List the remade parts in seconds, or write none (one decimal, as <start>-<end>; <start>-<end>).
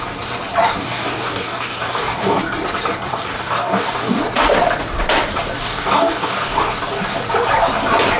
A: 0.8-2.4; 3.1-4.2; 5.6-6.7